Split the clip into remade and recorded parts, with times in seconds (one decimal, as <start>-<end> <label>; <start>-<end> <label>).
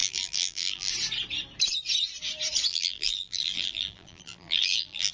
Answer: 0.0-0.9 remade; 0.9-2.7 recorded; 2.7-5.1 remade